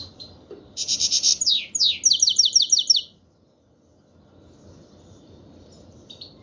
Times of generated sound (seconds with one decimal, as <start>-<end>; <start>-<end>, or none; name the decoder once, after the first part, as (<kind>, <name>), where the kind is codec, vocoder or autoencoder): 0.0-1.3 (vocoder, BigVGAN v2); 5.1-6.4